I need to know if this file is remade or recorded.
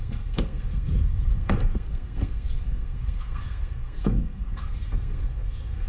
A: remade